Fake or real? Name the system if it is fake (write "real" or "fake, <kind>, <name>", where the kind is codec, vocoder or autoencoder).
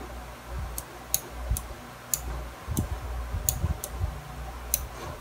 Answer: real